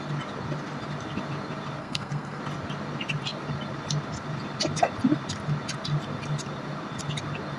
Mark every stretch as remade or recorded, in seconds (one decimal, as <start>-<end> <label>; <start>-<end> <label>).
0.0-1.8 recorded; 1.8-2.4 remade; 2.4-7.6 recorded